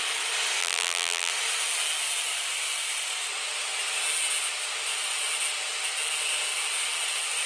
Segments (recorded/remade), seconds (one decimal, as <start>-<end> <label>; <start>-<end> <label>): 0.0-0.6 recorded; 0.6-1.3 remade; 1.3-7.5 recorded